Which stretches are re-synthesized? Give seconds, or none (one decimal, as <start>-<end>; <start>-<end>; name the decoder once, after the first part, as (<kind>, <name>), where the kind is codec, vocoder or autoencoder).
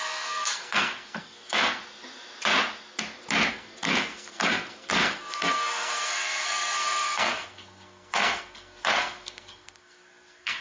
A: 0.0-1.8 (codec, SNAC); 3.5-10.6